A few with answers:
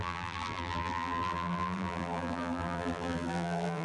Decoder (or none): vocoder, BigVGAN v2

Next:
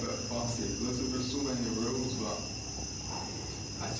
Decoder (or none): none